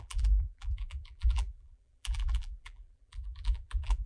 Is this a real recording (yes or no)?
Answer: no